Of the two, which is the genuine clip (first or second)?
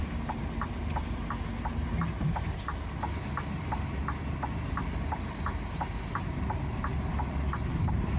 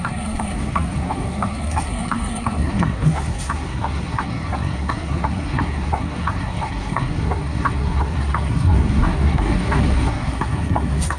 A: first